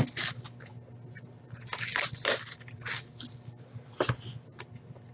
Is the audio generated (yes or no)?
no